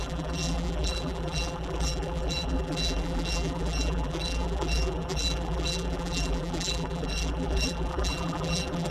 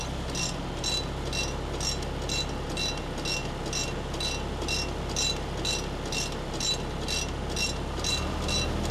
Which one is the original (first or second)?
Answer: second